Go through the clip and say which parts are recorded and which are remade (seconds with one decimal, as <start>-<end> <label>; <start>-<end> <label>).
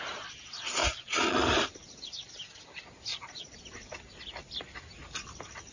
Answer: 0.0-0.8 recorded; 0.8-1.4 remade; 1.4-3.1 recorded; 3.1-3.6 remade; 3.6-5.7 recorded